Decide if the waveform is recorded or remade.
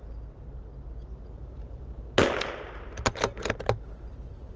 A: recorded